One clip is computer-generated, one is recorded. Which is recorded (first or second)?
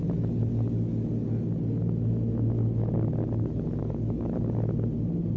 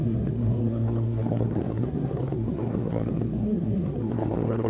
first